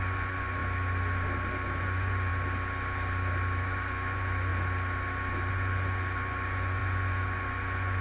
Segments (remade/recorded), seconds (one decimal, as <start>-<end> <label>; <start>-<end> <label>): 0.0-0.6 remade; 0.6-1.8 recorded; 1.8-2.3 remade; 2.3-3.6 recorded; 3.6-4.5 remade; 4.5-5.5 recorded; 5.5-8.0 remade